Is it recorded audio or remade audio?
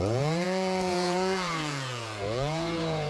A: remade